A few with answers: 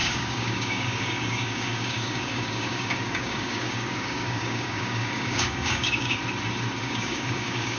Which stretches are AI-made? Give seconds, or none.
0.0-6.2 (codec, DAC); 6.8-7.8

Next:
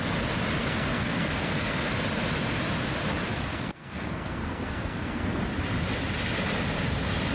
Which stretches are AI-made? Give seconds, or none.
0.6-1.9 (codec, SNAC); 3.3-5.4

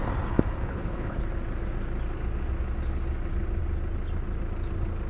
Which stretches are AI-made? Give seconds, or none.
0.6-1.2 (codec, HILCodec)

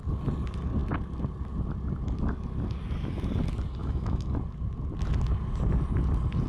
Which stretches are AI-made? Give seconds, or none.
3.8-4.3 (autoencoder, DAC-VAE)

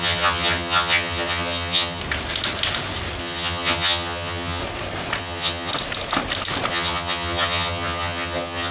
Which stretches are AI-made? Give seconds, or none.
0.0-2.0 (vocoder, HiFi-GAN); 3.2-4.6; 5.2-5.7; 6.7-8.7

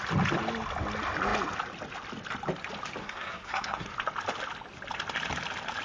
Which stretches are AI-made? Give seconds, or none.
3.0-3.9 (codec, SNAC)